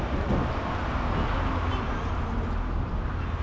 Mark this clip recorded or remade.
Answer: recorded